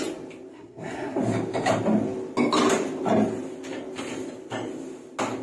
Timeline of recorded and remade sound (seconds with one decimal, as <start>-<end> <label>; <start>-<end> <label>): 0.0-0.5 recorded; 0.5-1.2 remade; 1.2-5.4 recorded